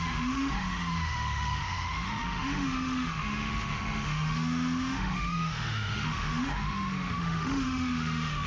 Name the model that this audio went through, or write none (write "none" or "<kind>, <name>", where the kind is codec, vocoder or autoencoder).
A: autoencoder, DAC-VAE